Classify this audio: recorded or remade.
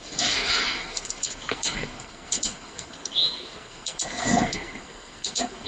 remade